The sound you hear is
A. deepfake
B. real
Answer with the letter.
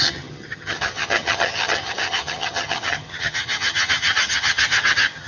A